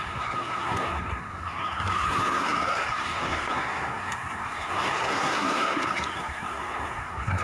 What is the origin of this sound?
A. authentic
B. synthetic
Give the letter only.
B